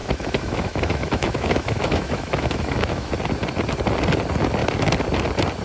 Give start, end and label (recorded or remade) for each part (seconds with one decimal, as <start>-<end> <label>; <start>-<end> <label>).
0.0-3.1 remade; 3.1-5.6 recorded